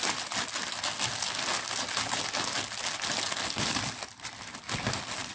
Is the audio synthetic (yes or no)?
no